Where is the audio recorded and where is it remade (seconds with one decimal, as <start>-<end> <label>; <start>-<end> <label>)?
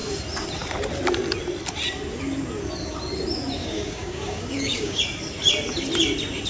0.0-3.6 recorded; 3.6-5.0 remade; 5.0-6.5 recorded